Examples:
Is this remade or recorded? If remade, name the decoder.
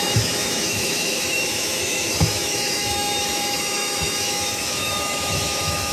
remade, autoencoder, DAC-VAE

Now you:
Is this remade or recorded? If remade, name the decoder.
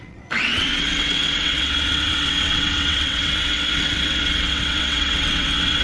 remade, vocoder, WaveNeXt